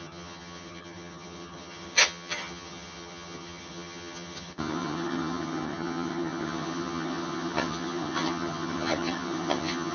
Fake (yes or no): yes